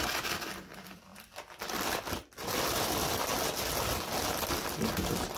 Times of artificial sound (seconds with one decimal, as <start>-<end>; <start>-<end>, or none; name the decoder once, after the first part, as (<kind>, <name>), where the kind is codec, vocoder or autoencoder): none